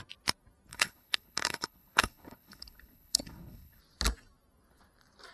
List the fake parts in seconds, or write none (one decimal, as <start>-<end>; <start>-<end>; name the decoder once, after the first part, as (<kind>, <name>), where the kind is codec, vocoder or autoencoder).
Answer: 0.7-3.8 (codec, HILCodec)